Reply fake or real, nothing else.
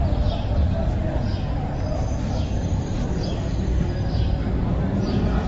fake